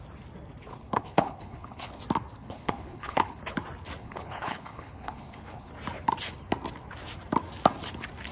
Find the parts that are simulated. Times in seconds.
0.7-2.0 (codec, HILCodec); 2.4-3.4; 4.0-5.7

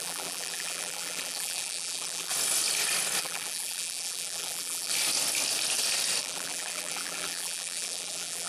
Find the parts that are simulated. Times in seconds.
0.0-2.3 (vocoder, BigVGAN v2); 3.2-4.9; 6.2-8.5

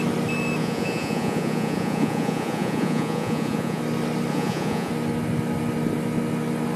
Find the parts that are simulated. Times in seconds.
0.6-3.8 (vocoder, Vocos); 4.3-4.9